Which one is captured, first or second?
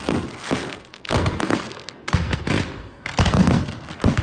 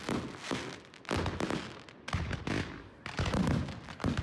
second